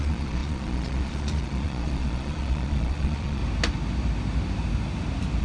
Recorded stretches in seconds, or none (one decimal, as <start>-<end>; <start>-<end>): 3.4-5.4